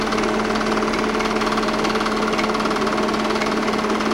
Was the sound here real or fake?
real